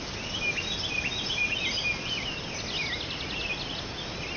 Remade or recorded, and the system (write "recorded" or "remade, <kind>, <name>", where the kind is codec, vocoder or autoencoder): recorded